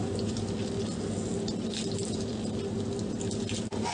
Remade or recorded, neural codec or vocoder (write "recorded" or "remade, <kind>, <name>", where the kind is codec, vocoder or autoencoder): recorded